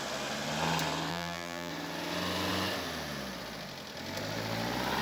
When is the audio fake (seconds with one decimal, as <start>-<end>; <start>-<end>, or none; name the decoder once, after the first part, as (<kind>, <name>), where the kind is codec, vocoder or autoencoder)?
1.1-1.7 (vocoder, BigVGAN v2)